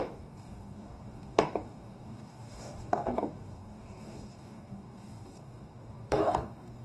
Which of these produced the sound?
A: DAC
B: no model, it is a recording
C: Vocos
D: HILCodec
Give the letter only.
A